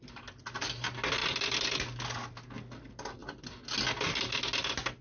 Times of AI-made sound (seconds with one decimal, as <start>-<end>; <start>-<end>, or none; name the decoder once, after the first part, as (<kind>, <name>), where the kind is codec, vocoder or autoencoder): none